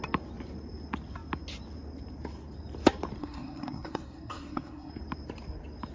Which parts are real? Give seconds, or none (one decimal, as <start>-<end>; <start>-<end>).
0.0-3.2; 4.9-5.9